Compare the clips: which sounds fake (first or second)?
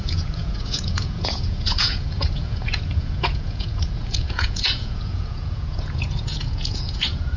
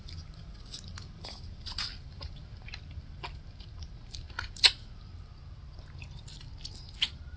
first